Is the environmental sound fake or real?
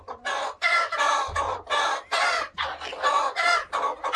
real